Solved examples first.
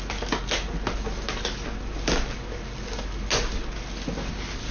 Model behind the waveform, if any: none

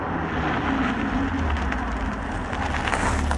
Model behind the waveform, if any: none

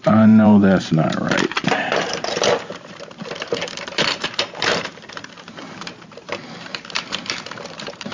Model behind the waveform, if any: vocoder, BigVGAN v2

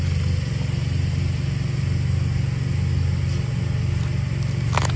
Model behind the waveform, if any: none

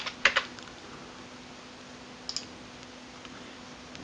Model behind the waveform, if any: none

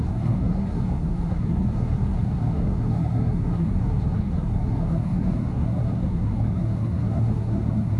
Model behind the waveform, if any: codec, SNAC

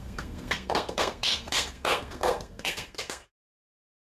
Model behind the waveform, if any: codec, SNAC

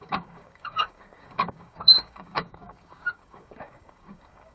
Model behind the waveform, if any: codec, DAC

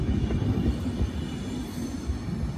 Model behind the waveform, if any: none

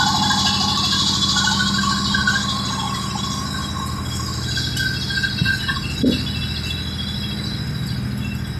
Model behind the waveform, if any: none